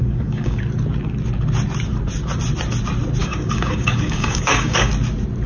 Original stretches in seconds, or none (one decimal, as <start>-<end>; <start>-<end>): 0.6-3.2; 4.9-5.5